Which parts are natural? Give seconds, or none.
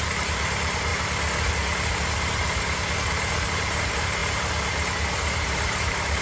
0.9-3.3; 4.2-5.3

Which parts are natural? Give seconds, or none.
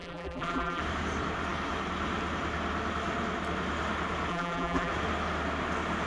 0.8-4.3; 4.9-6.1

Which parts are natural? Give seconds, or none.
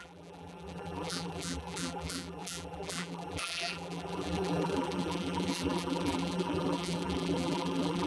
none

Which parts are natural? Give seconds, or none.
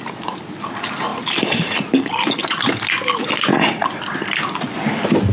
0.0-1.1; 1.7-5.3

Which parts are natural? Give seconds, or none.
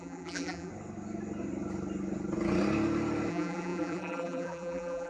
0.7-3.3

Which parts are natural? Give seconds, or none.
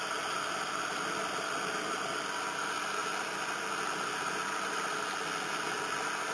0.0-6.3